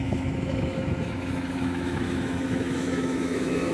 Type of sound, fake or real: fake